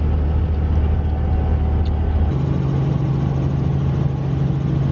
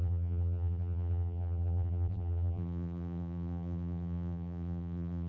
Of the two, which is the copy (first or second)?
second